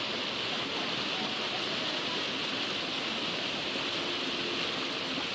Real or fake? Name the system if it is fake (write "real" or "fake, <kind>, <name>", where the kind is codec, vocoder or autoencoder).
real